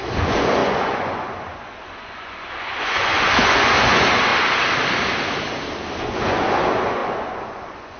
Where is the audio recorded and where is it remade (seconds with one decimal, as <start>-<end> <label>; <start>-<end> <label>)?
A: 0.0-4.3 remade; 4.3-6.0 recorded; 6.0-8.0 remade